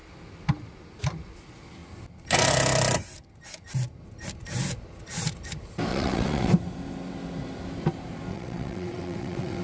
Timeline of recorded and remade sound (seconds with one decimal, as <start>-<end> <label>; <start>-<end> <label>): 0.0-5.9 recorded; 5.9-6.5 remade; 6.5-8.3 recorded; 8.3-9.6 remade